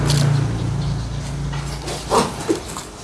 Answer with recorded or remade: recorded